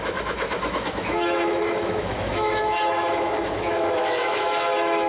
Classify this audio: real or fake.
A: fake